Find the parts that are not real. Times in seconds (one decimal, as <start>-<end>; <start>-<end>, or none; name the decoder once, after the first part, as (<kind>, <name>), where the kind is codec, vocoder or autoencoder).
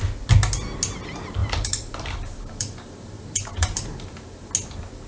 1.4-4.5 (vocoder, BigVGAN v2)